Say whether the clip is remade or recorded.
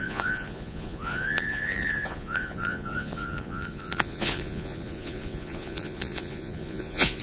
remade